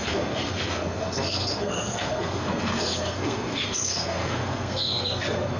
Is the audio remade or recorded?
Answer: remade